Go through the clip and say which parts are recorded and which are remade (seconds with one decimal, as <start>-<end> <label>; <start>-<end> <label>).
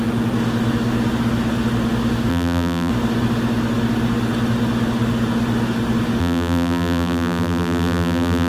0.0-2.3 recorded; 2.3-2.9 remade; 2.9-6.2 recorded; 6.2-8.5 remade